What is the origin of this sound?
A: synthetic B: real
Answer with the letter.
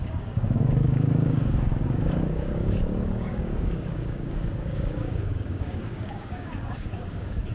A